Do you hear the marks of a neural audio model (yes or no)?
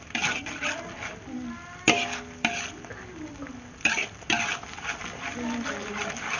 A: no